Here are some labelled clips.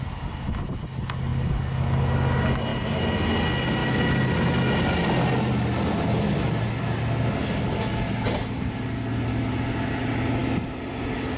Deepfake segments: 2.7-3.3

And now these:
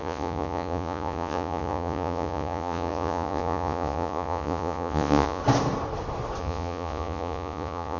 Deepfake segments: 0.0-5.4; 6.4-8.0

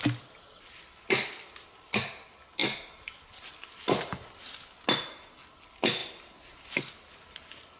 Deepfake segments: none

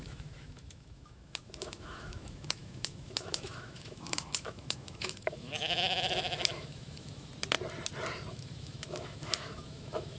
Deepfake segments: 0.0-7.3; 8.3-10.2

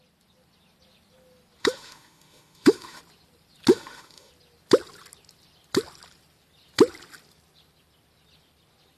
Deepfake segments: 1.6-3.0; 3.7-4.3